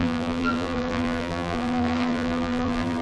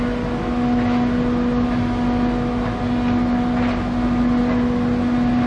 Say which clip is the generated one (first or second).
first